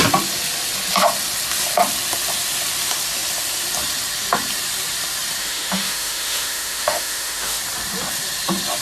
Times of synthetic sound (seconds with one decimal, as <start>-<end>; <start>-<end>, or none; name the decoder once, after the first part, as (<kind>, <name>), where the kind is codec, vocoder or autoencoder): 5.4-7.6 (autoencoder, DAC-VAE)